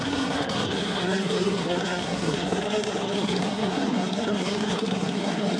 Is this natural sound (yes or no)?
no